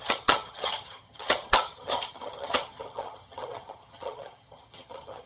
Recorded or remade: remade